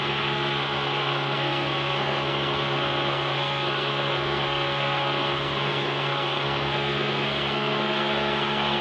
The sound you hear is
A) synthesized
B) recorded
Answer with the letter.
A